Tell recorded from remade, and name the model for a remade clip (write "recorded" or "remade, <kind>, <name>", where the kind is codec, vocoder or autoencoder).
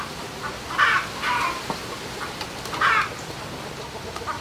recorded